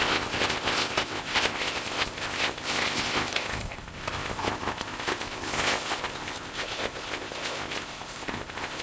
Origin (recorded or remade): remade